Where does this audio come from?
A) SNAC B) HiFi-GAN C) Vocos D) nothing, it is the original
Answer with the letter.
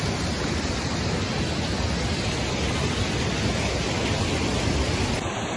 D